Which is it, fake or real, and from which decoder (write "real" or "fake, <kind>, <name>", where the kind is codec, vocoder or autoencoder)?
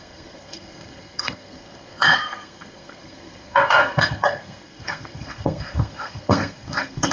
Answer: fake, codec, SNAC